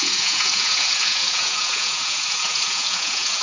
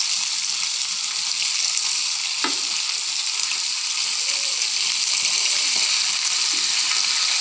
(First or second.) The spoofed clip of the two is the first